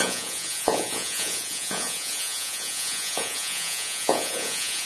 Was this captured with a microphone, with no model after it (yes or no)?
no